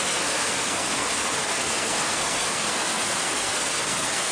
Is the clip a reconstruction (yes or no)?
yes